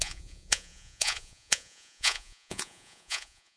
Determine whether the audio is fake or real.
fake